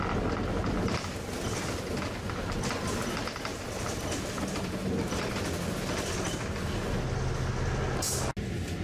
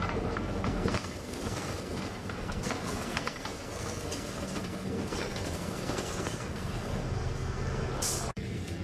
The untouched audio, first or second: first